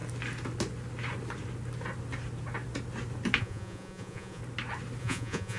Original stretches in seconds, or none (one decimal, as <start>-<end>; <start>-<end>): 0.0-3.4; 4.4-5.0